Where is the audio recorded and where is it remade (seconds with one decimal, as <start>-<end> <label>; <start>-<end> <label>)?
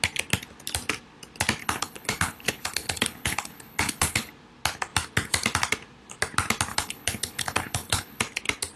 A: 0.0-1.6 recorded; 1.6-4.3 remade; 4.3-6.7 recorded; 6.7-8.2 remade; 8.2-8.8 recorded